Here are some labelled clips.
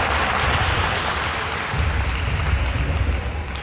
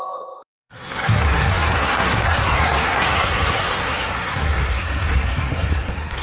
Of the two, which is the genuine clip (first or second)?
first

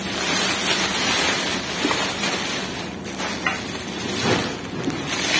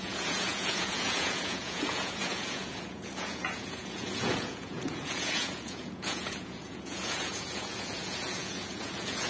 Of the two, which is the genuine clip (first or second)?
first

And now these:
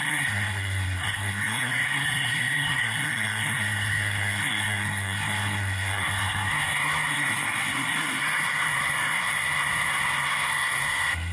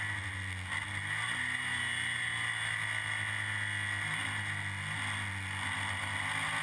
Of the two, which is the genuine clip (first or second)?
second